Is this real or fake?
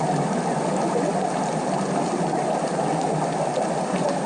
real